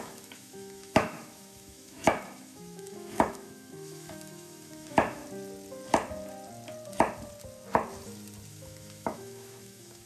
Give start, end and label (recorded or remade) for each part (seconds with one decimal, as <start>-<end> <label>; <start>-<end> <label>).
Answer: 0.0-5.2 remade; 5.2-8.5 recorded; 8.5-10.1 remade